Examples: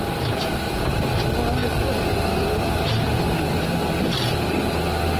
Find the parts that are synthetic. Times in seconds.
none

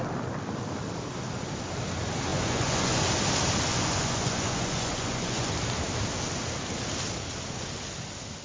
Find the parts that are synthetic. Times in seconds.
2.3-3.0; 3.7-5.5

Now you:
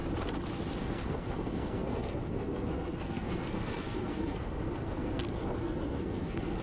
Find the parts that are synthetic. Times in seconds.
0.8-6.6

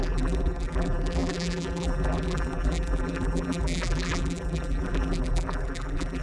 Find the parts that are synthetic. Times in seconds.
0.0-6.2

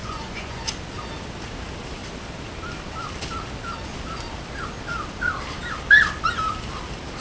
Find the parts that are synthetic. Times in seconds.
0.0-0.6

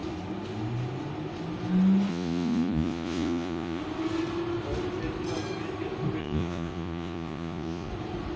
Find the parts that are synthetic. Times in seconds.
2.1-3.8; 6.2-7.9

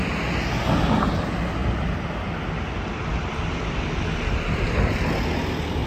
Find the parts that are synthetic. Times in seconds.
1.6-5.1

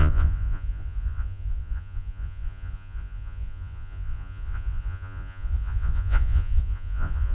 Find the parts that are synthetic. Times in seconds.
0.0-7.3